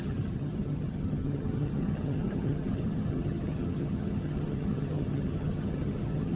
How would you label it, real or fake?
fake